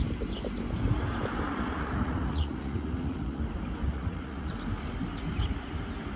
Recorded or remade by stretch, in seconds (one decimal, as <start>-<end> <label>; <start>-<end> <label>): 0.0-1.5 recorded; 1.5-3.4 remade; 3.4-3.9 recorded; 3.9-4.5 remade; 4.5-6.2 recorded